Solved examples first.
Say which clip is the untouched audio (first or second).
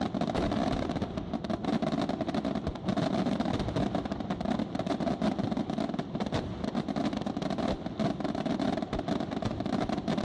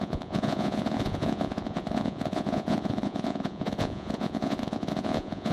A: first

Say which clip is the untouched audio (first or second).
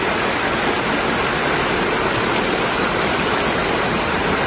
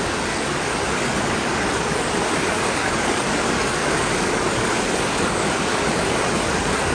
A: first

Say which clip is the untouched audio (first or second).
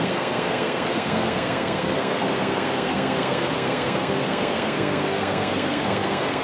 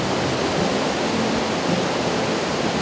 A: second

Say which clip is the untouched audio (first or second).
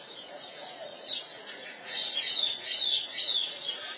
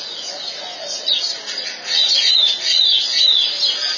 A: second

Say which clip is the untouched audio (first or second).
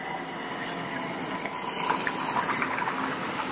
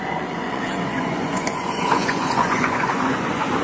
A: first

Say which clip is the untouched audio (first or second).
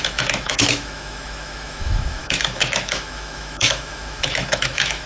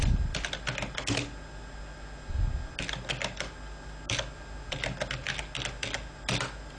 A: second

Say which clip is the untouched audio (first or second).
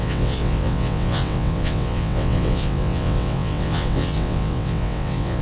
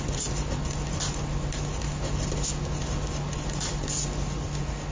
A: second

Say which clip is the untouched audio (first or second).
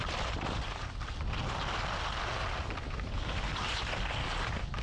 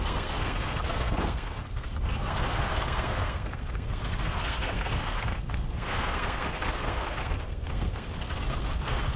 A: first